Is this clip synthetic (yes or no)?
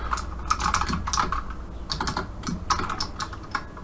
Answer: no